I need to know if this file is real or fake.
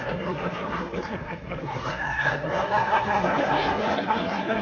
fake